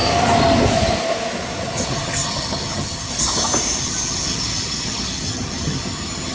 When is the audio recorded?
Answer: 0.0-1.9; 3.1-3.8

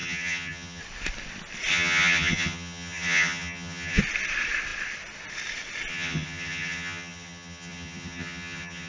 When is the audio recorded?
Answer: 0.8-1.7; 4.0-5.9

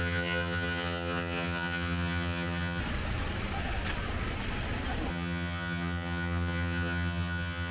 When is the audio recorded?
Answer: 2.8-5.1